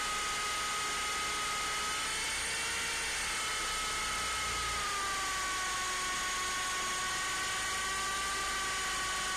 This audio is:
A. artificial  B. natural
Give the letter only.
B